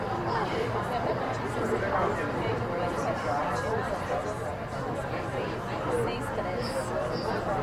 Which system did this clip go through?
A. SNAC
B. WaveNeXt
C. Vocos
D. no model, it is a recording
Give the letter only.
D